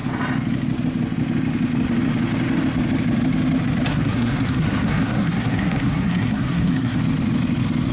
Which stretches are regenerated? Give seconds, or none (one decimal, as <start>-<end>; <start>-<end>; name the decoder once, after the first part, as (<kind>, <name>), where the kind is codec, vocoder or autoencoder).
3.9-7.0 (codec, SNAC)

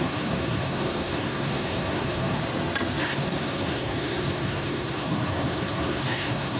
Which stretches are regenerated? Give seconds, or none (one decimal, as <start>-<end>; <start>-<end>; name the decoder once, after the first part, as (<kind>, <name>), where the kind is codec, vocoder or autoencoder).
0.0-2.4 (codec, SNAC); 3.0-6.6

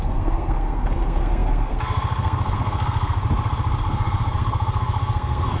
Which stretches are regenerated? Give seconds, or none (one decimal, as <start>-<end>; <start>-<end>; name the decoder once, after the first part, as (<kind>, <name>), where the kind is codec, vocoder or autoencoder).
0.0-3.2 (codec, SNAC); 3.8-5.6

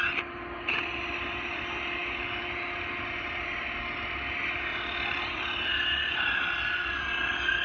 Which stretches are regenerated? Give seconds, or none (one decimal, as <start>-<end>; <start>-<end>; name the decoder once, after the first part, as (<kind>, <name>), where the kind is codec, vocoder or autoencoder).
none

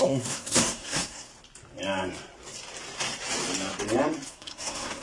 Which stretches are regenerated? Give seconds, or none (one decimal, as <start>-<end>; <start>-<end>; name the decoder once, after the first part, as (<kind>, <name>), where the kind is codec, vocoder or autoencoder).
0.0-1.3 (codec, SNAC); 4.3-5.0